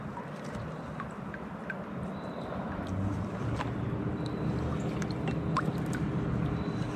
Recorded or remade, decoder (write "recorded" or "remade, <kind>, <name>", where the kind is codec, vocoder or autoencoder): recorded